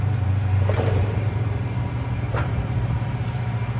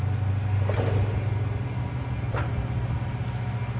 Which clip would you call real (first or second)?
second